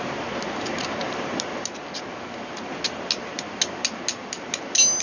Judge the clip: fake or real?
real